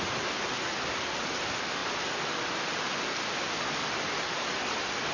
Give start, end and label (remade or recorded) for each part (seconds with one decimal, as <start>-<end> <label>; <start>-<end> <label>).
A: 0.0-5.1 recorded